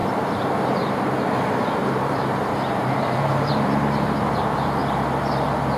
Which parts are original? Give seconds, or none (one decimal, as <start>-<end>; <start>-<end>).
4.8-5.8